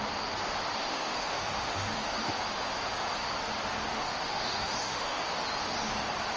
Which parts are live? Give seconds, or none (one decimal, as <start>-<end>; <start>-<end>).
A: 0.0-0.8; 2.3-3.9; 5.3-6.4